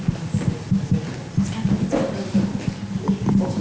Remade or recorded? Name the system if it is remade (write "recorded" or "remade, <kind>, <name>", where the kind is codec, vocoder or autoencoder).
recorded